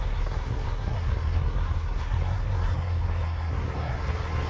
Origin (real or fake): fake